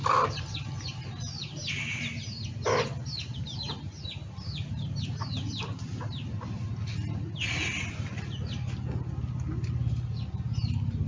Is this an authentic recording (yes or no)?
yes